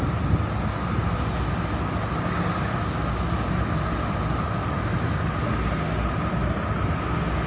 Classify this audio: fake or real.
real